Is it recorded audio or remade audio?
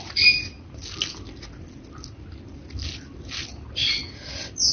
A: recorded